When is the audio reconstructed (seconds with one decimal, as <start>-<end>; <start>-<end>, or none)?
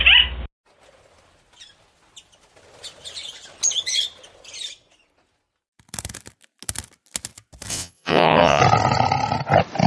7.7-8.6